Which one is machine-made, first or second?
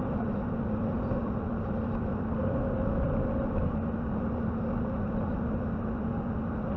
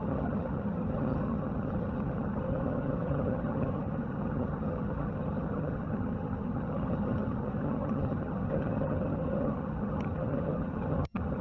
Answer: second